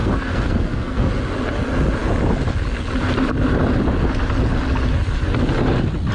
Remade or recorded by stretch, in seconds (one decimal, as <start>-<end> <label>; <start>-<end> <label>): 0.0-1.1 remade; 1.1-6.1 recorded